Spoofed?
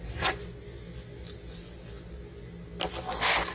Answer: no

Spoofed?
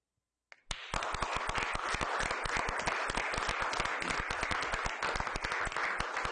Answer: no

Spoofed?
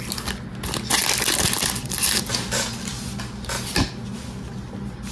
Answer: no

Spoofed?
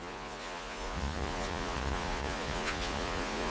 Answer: yes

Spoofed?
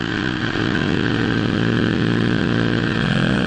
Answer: yes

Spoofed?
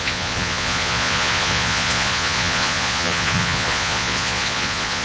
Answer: yes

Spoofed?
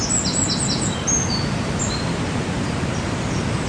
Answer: no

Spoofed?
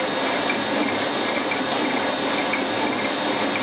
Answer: no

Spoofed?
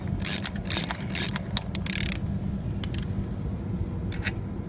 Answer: no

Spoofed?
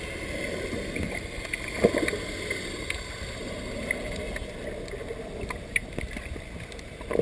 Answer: no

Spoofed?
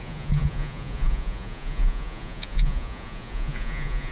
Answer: yes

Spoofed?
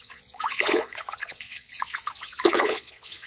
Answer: yes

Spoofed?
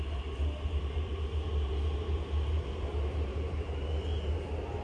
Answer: no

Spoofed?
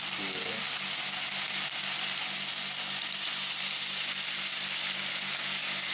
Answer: no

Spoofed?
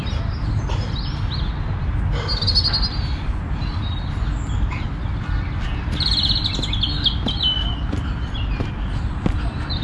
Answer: no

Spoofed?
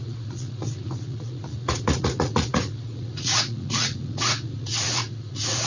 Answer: yes